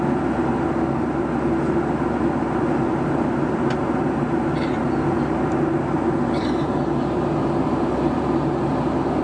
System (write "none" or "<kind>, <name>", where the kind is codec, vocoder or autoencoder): none